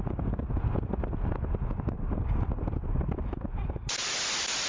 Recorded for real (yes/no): yes